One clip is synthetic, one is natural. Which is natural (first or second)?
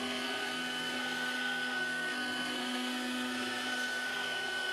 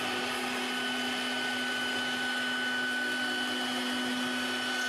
second